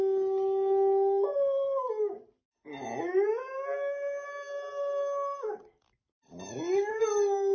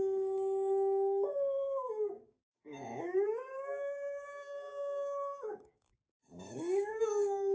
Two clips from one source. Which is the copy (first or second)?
second